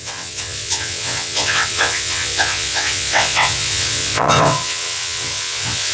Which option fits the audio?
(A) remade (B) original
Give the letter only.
A